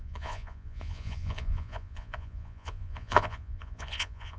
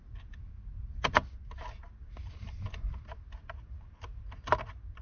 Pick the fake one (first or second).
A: first